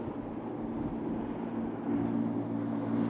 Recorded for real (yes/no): yes